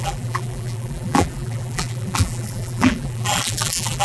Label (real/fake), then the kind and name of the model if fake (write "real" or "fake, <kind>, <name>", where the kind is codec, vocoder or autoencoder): fake, vocoder, BigVGAN v2